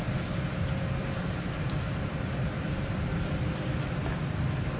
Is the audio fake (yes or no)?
no